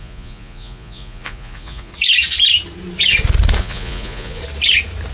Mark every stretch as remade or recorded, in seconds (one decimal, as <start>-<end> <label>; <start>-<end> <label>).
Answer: 0.0-1.9 remade; 1.9-3.6 recorded; 3.6-4.4 remade; 4.4-5.1 recorded

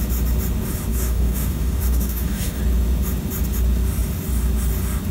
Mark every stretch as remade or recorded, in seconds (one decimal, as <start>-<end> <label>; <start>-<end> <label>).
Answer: 0.0-0.9 recorded; 0.9-2.6 remade; 2.6-5.1 recorded

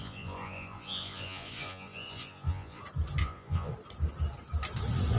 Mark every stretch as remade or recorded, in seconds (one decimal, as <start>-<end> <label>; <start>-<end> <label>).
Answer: 0.0-2.8 remade; 2.8-3.2 recorded; 3.2-3.7 remade; 3.7-5.2 recorded

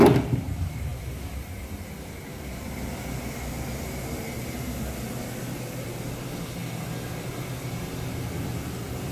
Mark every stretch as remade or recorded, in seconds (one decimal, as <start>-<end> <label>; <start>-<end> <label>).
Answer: 0.0-9.1 recorded

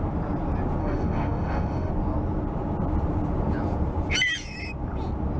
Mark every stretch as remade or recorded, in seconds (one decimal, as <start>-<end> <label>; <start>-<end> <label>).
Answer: 0.0-0.8 recorded; 0.8-1.9 remade; 1.9-5.4 recorded

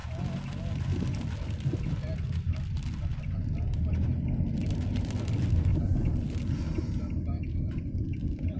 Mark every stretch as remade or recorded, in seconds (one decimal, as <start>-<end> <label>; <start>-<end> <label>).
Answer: 0.0-0.7 recorded; 0.7-8.6 remade

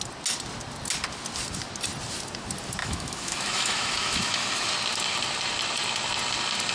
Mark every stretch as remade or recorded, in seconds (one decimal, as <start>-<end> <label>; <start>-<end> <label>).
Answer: 0.0-2.8 recorded; 2.8-4.7 remade; 4.7-6.7 recorded